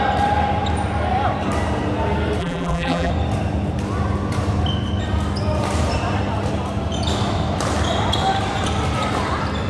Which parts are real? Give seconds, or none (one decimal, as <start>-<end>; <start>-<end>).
0.0-2.4; 3.1-9.7